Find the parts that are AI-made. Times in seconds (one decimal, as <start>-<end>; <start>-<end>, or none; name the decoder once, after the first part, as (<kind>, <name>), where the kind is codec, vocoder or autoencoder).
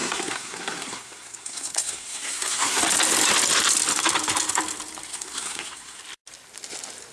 0.0-2.8 (codec, SNAC); 5.1-6.0